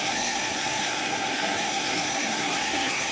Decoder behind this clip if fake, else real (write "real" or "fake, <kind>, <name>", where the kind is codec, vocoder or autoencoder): fake, codec, SNAC